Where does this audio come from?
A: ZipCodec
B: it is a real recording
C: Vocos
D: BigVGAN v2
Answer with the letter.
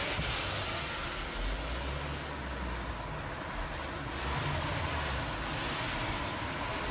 B